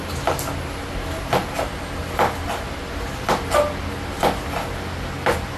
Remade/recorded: recorded